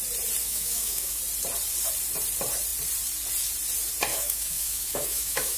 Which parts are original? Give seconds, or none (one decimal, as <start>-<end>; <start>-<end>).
0.0-0.4; 1.2-4.1